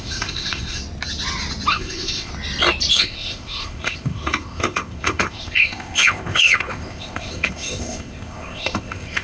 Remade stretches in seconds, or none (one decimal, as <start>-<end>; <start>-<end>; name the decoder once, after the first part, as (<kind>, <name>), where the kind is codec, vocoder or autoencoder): 0.0-0.8 (codec, ZipCodec); 1.7-2.3; 2.9-9.2